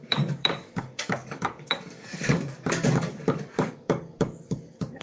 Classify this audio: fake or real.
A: fake